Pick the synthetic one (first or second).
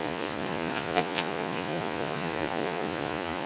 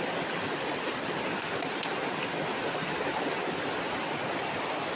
first